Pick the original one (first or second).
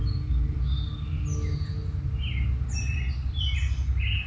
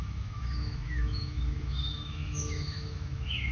first